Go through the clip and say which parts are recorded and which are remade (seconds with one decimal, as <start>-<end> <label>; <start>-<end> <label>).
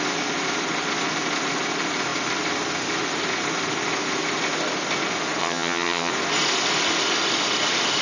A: 0.0-5.4 recorded; 5.4-6.1 remade; 6.1-8.0 recorded